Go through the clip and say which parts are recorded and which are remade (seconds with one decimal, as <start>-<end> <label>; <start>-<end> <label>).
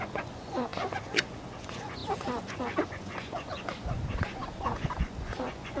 0.0-5.8 remade